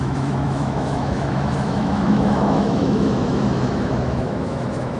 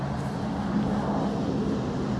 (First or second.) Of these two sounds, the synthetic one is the first